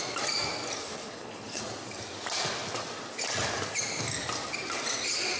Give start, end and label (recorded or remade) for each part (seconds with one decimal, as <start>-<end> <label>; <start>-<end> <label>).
0.0-0.8 recorded; 0.8-1.6 remade; 1.6-5.4 recorded